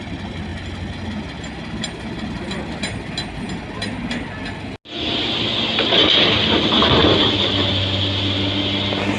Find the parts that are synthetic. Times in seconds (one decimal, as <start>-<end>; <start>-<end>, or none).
none